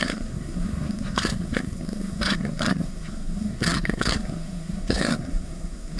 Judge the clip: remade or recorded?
remade